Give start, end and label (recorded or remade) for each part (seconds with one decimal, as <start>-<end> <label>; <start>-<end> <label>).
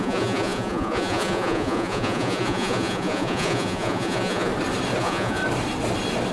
0.0-4.5 remade; 4.5-5.0 recorded; 5.0-5.4 remade; 5.4-6.3 recorded